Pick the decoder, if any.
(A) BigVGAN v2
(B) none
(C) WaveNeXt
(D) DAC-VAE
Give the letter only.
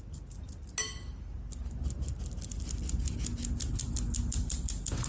B